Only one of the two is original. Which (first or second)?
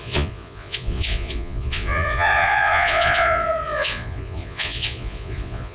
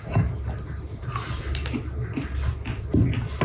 second